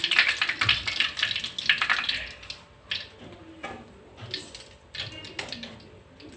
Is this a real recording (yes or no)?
yes